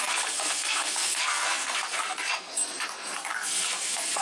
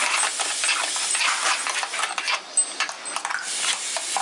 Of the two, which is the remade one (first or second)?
first